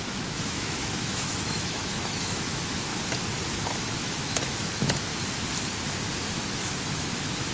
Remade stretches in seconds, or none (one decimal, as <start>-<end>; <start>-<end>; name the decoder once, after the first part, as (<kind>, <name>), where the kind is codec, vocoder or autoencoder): 0.0-2.9 (autoencoder, DAC-VAE); 3.8-5.1; 6.3-7.5